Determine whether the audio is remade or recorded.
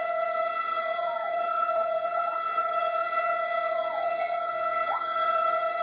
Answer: remade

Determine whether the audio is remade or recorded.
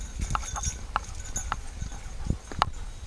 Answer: recorded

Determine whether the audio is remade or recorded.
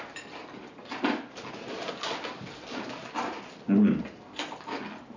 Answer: recorded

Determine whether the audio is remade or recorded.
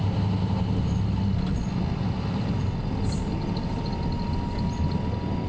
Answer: recorded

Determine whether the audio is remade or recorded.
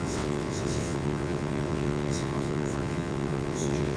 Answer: remade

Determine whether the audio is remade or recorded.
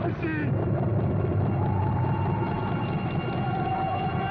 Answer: recorded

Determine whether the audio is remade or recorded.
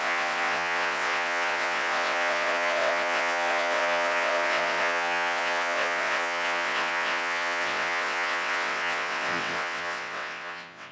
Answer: remade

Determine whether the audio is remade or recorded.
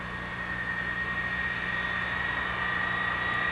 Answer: recorded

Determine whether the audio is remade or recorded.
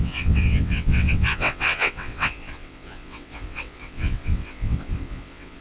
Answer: remade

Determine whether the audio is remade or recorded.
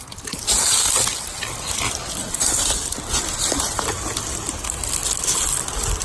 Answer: recorded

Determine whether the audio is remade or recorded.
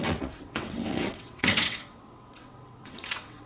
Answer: remade